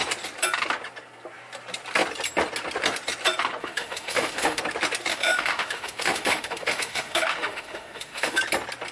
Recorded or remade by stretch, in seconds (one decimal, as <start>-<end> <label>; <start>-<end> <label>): 0.0-3.6 recorded; 3.6-4.6 remade; 4.6-5.1 recorded; 5.1-8.4 remade; 8.4-8.9 recorded